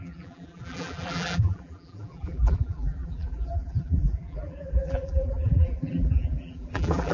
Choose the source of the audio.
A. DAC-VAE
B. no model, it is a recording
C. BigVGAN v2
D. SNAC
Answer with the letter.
C